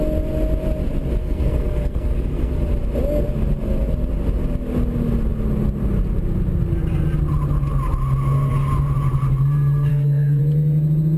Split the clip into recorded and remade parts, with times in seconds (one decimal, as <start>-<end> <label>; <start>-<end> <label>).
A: 0.0-1.2 recorded; 1.2-2.5 remade; 2.5-9.9 recorded; 9.9-10.4 remade; 10.4-11.2 recorded